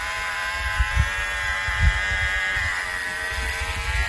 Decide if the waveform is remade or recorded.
recorded